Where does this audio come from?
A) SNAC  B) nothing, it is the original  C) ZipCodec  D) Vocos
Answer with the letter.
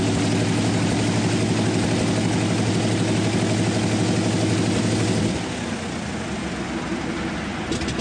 B